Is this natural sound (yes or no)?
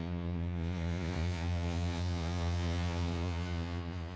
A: no